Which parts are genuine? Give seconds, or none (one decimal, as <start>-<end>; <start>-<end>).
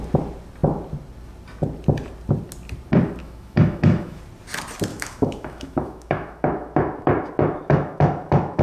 0.0-3.2; 4.2-4.9